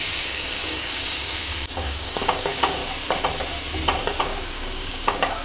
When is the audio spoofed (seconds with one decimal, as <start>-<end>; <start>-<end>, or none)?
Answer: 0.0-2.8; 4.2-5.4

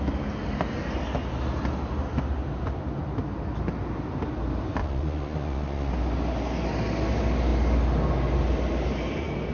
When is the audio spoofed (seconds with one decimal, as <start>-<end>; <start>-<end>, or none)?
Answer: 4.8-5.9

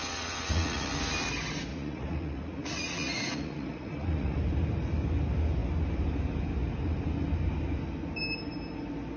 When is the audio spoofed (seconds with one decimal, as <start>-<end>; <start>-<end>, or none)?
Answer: 0.0-0.9; 1.7-4.4

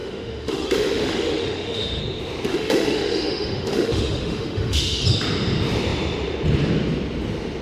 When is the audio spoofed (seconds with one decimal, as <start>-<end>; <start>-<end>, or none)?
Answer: 0.0-2.0; 2.5-5.0